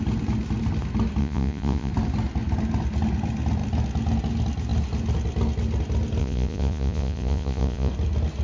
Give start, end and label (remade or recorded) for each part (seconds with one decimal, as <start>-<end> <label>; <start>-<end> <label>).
0.0-1.2 recorded; 1.2-1.9 remade; 1.9-6.2 recorded; 6.2-7.9 remade; 7.9-8.4 recorded